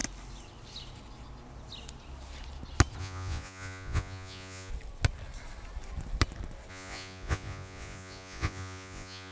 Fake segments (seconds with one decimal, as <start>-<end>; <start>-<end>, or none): 3.0-4.7; 6.7-9.3